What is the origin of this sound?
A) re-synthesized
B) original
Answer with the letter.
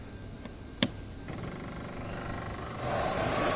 B